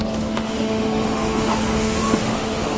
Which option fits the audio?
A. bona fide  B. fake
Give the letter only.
B